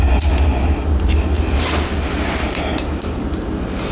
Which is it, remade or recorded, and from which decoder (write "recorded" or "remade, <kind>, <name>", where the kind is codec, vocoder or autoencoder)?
recorded